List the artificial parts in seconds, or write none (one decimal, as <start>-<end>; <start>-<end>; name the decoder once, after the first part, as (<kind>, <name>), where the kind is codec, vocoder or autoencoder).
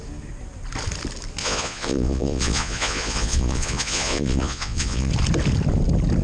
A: 1.4-5.1 (vocoder, Vocos)